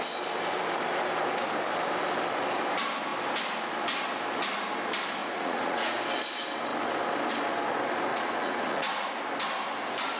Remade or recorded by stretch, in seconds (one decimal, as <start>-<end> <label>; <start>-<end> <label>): 0.0-5.2 recorded; 5.2-6.0 remade; 6.0-8.1 recorded; 8.1-9.1 remade; 9.1-10.2 recorded